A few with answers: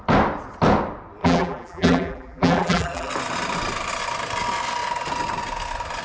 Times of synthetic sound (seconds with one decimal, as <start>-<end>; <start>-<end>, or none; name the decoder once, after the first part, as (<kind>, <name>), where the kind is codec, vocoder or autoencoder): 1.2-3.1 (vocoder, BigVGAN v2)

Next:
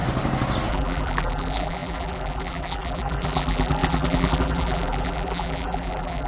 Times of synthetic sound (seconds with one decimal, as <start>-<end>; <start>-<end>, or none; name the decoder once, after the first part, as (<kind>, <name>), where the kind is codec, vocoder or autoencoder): 0.7-6.3 (vocoder, BigVGAN v2)

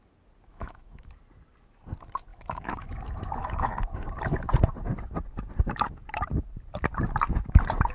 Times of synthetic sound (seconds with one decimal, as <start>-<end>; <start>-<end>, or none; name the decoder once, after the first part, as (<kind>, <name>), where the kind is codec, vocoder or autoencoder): 0.5-1.2 (autoencoder, DAC-VAE); 2.3-3.8

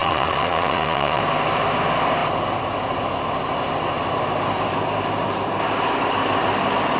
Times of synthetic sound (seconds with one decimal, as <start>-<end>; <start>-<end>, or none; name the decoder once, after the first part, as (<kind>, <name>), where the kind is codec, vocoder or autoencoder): 0.0-1.2 (vocoder, Vocos)

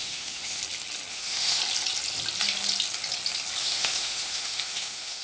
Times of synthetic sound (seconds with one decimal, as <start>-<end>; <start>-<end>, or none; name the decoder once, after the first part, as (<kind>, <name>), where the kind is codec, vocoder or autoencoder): 0.0-0.6 (autoencoder, DAC-VAE); 1.1-1.6; 3.6-5.2